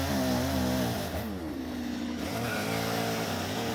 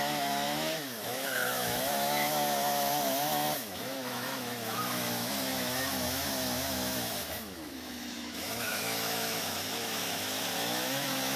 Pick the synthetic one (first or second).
second